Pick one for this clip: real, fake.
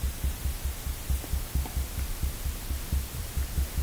fake